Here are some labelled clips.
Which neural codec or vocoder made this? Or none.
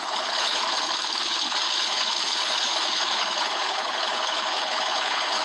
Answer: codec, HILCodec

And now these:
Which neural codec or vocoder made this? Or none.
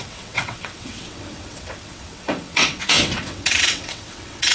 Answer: vocoder, WaveNeXt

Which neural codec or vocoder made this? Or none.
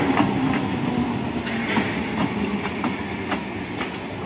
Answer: none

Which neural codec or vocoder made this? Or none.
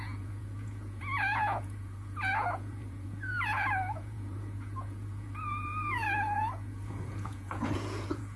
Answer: vocoder, Vocos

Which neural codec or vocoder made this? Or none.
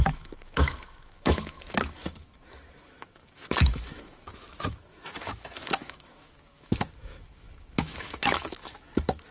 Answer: autoencoder, DAC-VAE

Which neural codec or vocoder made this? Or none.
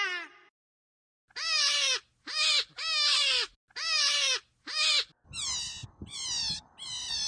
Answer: none